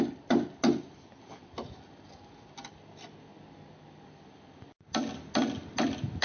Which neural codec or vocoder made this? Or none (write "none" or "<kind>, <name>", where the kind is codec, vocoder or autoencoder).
none